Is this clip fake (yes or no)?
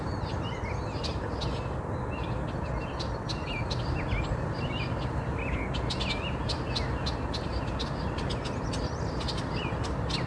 no